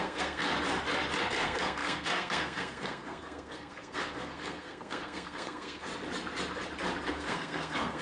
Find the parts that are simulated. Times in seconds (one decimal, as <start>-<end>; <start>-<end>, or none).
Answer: 0.0-0.4; 1.2-5.9; 7.1-8.0